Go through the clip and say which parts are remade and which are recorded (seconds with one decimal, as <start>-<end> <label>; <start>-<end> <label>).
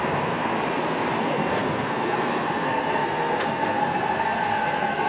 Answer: 0.0-0.5 remade; 0.5-1.2 recorded; 1.2-5.1 remade